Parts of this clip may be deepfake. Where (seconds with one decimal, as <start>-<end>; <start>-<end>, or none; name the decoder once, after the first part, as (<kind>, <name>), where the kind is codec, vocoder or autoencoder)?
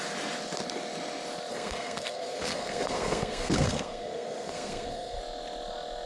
1.5-5.2 (codec, SNAC)